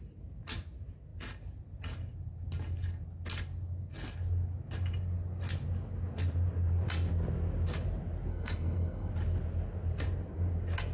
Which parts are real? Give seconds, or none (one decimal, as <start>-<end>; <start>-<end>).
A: 0.0-8.3; 9.1-10.9